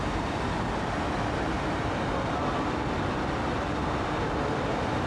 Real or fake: real